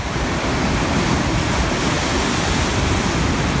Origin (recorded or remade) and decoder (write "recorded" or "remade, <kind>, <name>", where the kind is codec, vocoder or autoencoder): recorded